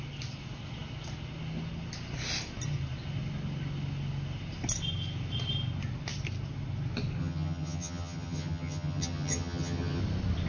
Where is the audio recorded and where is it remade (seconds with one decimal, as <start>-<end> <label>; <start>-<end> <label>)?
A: 0.0-7.2 recorded; 7.2-10.0 remade; 10.0-10.5 recorded

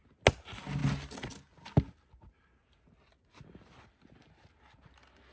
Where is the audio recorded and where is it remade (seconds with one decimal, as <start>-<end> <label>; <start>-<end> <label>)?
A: 0.0-5.3 recorded

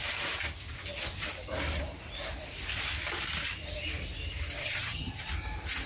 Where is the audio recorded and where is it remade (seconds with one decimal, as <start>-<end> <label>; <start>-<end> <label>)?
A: 0.0-4.6 recorded; 4.6-5.3 remade; 5.3-5.9 recorded